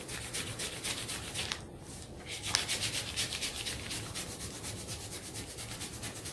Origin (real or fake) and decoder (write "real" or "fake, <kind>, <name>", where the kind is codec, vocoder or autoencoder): real